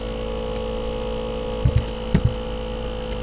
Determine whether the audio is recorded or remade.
recorded